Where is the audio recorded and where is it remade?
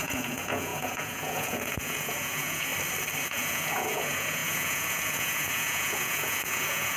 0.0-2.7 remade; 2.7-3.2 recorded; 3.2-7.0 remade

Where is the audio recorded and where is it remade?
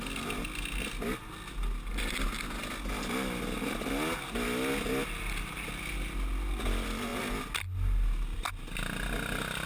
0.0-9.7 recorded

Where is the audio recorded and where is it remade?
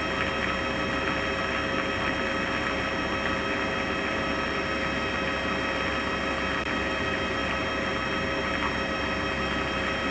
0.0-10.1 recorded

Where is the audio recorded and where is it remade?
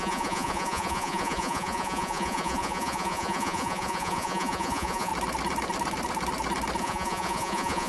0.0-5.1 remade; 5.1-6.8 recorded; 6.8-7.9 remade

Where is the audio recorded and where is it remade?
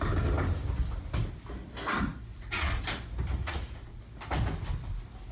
0.0-2.3 recorded; 2.3-2.8 remade; 2.8-3.4 recorded; 3.4-4.0 remade; 4.0-5.3 recorded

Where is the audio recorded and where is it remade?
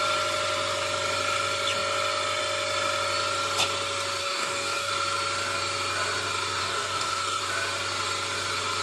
0.0-4.2 recorded; 4.2-4.9 remade; 4.9-6.6 recorded; 6.6-7.4 remade; 7.4-8.8 recorded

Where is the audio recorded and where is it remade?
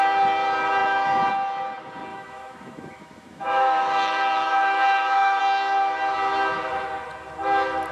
0.0-2.1 recorded; 2.1-5.4 remade; 5.4-7.9 recorded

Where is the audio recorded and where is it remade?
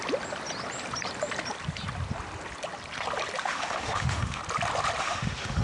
0.0-3.4 recorded; 3.4-4.4 remade; 4.4-5.0 recorded; 5.0-5.6 remade